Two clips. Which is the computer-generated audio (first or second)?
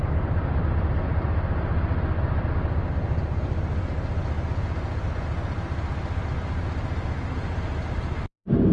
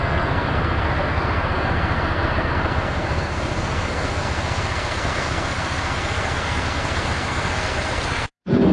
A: second